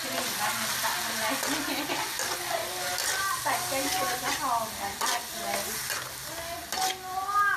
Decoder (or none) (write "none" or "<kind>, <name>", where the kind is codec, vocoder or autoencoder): none